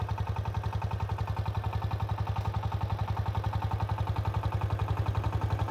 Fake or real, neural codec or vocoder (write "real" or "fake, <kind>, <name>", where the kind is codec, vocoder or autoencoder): real